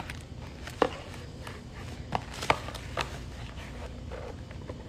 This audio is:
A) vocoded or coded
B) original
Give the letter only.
B